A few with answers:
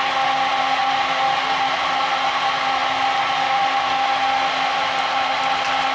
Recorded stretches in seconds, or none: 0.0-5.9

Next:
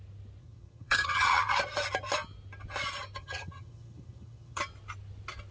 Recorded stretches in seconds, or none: 0.0-0.4; 1.4-3.2; 4.6-5.5

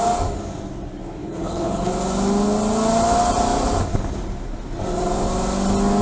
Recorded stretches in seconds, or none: 0.0-1.2; 1.9-6.0

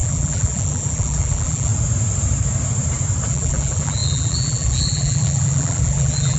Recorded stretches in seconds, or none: 1.7-3.3

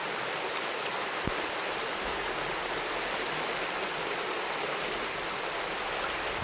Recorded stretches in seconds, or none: 0.0-6.4